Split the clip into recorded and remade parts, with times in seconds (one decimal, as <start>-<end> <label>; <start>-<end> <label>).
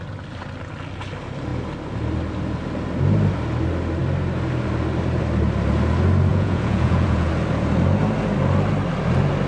0.0-6.3 recorded; 6.3-7.3 remade; 7.3-9.5 recorded